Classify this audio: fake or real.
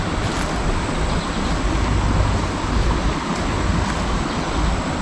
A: real